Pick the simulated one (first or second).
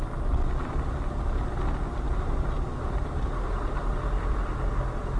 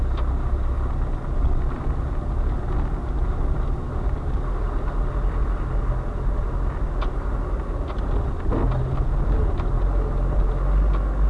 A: first